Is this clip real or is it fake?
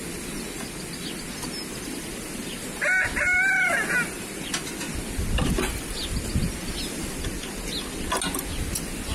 real